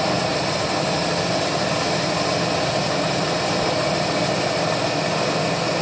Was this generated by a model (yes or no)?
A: yes